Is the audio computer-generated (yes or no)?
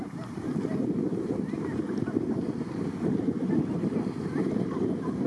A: yes